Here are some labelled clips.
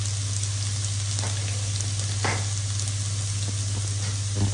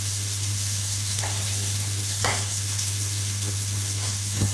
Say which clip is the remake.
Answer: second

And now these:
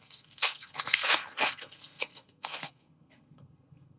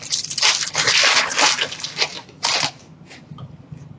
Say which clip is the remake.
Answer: first